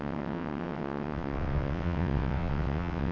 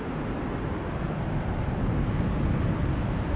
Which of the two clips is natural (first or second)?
second